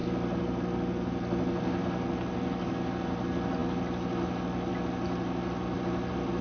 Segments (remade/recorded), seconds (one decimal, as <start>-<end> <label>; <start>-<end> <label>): 0.0-6.4 recorded